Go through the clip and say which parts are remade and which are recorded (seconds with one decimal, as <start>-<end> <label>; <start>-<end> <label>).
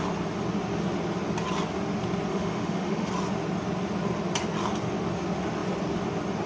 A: 0.0-2.3 recorded; 2.3-3.1 remade; 3.1-6.5 recorded